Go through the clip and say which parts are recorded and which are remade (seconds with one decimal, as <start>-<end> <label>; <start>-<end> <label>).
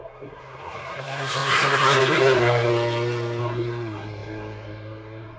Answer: 0.0-2.7 remade; 2.7-3.4 recorded; 3.4-5.4 remade